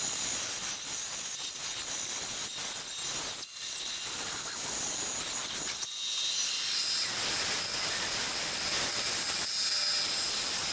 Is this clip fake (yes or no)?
no